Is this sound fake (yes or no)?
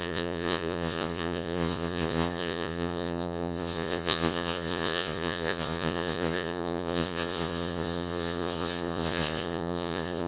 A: yes